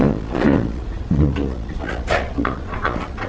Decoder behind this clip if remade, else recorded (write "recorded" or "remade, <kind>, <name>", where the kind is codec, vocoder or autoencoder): remade, vocoder, Vocos